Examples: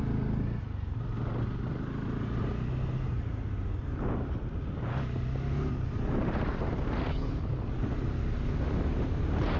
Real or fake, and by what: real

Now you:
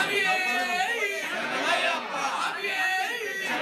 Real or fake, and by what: fake, vocoder, Vocos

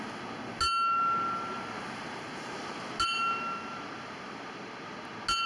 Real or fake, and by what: real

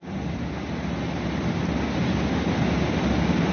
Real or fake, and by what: real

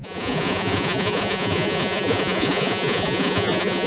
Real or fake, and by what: fake, vocoder, Vocos